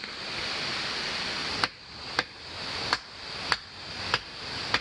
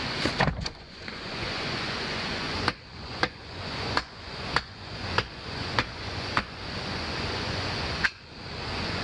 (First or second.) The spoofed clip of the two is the second